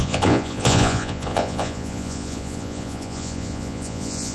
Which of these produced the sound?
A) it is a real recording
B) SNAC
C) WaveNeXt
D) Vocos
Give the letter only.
D